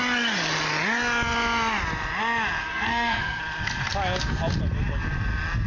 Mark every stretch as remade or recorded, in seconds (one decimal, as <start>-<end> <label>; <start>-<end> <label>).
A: 0.0-2.6 recorded; 2.6-3.4 remade; 3.4-5.7 recorded